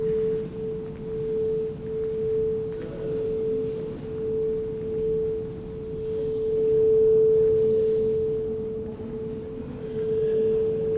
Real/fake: real